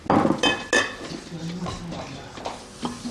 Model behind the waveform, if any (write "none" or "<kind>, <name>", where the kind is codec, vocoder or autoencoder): none